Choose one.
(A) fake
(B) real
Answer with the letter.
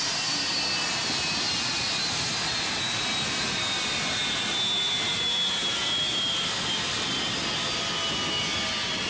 B